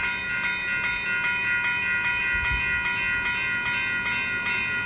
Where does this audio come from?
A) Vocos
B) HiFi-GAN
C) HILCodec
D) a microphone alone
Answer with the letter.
D